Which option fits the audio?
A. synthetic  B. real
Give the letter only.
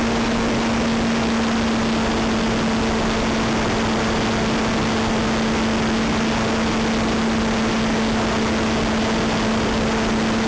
B